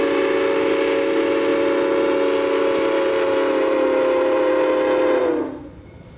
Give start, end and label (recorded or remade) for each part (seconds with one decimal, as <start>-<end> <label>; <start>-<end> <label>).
0.0-6.2 recorded